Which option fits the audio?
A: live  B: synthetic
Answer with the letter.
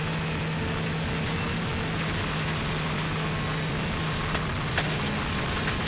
A